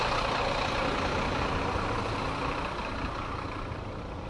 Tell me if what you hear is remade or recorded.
recorded